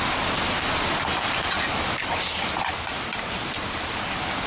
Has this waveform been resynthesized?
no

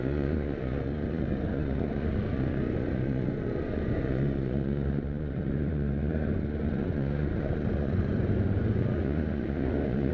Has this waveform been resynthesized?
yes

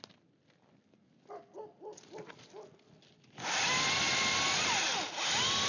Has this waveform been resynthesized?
no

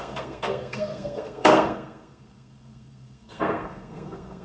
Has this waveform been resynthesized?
yes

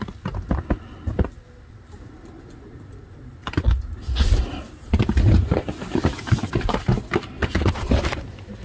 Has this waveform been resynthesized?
no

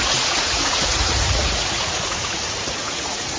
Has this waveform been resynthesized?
yes